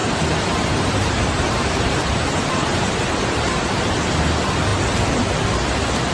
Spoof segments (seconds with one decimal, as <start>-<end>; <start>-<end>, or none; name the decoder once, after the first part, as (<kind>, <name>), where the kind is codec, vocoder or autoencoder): 0.0-3.7 (vocoder, BigVGAN v2)